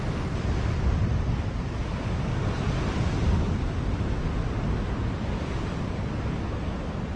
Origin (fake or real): real